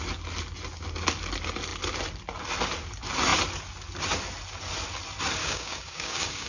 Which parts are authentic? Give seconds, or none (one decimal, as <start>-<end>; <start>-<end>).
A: 0.0-5.4